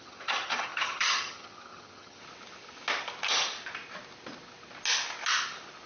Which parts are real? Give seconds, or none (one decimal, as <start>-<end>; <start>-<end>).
2.2-5.9